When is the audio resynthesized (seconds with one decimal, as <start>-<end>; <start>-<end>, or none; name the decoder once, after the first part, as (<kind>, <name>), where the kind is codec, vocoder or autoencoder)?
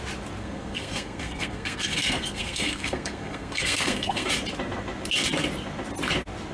0.4-4.3 (codec, SNAC)